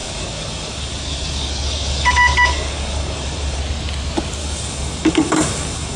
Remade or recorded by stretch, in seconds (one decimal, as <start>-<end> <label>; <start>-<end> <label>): 0.0-3.6 remade; 3.6-4.4 recorded; 4.4-6.0 remade